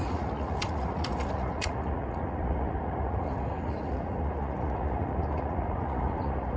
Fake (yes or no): yes